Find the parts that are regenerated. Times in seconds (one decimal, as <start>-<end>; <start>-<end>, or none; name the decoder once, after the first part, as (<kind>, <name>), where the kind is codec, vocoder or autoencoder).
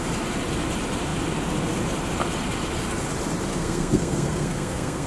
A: 3.5-5.1 (codec, SNAC)